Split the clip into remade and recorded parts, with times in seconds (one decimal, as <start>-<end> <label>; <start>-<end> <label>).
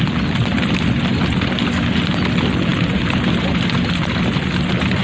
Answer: 0.0-2.7 recorded; 2.7-3.6 remade; 3.6-5.0 recorded